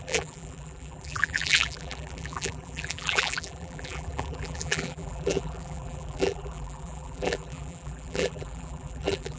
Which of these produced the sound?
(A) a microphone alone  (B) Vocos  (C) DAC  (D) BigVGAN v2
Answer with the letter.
D